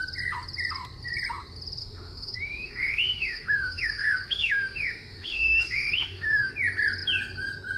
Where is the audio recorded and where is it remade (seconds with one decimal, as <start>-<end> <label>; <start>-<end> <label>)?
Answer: 0.0-1.8 recorded; 1.8-6.5 remade; 6.5-7.8 recorded